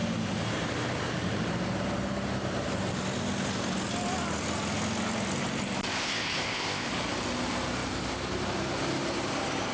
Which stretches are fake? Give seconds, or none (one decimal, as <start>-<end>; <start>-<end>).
5.9-6.9